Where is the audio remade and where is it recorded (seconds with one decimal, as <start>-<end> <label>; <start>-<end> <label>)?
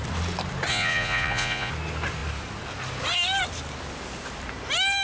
0.0-0.7 recorded; 0.7-1.7 remade; 1.7-5.0 recorded